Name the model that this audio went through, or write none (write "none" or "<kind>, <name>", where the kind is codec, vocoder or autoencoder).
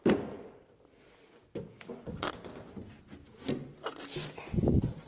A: none